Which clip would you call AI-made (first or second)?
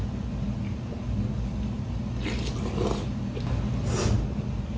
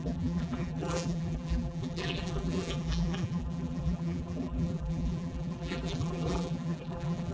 second